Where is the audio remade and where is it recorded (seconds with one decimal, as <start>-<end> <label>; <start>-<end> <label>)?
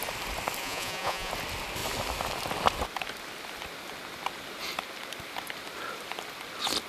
0.0-0.6 recorded; 0.6-1.3 remade; 1.3-6.9 recorded